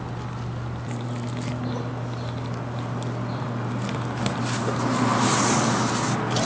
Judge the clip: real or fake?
real